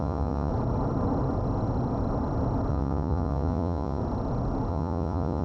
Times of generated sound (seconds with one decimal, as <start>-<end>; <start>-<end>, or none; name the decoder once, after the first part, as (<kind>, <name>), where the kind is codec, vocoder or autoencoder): 0.0-0.5 (vocoder, Vocos); 2.7-4.0; 4.7-5.4